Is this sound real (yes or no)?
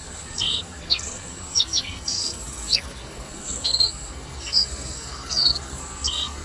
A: no